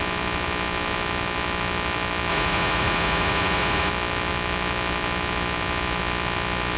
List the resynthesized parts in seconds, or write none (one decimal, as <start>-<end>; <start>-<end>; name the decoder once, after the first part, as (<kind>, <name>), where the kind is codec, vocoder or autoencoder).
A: 2.3-3.9 (vocoder, Vocos)